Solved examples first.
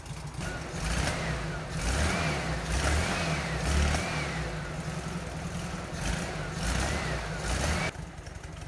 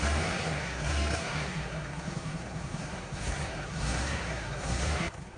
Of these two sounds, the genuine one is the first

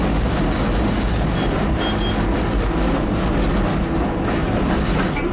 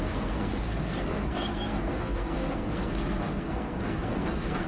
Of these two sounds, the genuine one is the first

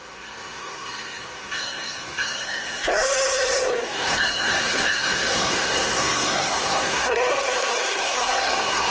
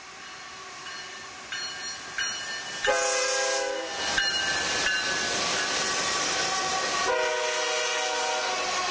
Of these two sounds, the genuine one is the second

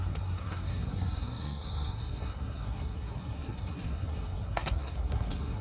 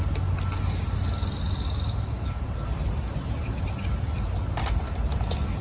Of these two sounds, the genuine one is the second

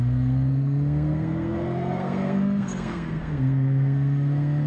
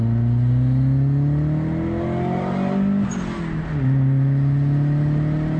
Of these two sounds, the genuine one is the second